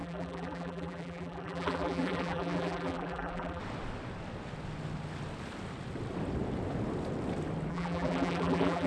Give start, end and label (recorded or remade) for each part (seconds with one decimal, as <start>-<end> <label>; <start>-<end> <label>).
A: 0.0-3.6 remade; 3.6-7.7 recorded; 7.7-8.9 remade